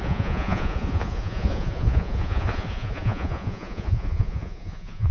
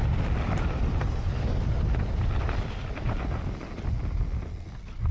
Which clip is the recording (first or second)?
second